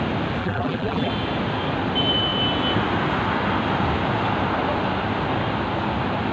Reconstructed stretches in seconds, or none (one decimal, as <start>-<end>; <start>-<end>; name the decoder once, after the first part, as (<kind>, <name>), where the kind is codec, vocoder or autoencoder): 0.4-1.1 (vocoder, BigVGAN v2)